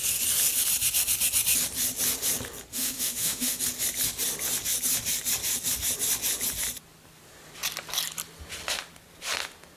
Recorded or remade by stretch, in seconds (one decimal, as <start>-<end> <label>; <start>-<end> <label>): 0.0-2.7 recorded; 2.7-3.6 remade; 3.6-9.8 recorded